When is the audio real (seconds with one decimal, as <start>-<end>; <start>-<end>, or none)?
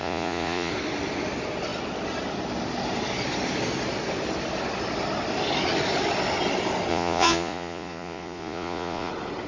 0.7-6.9; 9.1-9.5